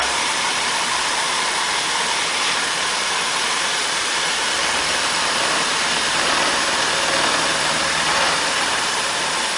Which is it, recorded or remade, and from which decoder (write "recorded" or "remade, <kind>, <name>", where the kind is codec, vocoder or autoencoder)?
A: remade, vocoder, BigVGAN v2